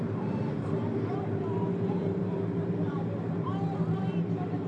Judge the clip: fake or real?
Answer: fake